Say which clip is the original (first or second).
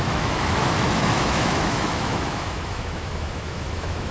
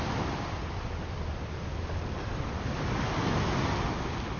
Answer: second